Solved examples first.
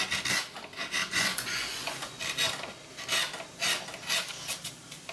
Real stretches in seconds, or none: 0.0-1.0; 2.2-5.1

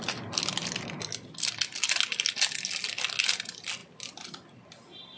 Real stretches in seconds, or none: 0.0-5.2